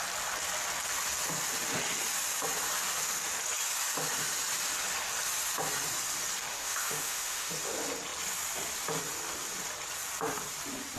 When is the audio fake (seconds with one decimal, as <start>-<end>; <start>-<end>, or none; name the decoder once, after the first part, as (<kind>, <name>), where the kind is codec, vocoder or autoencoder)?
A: 6.5-7.5 (autoencoder, DAC-VAE)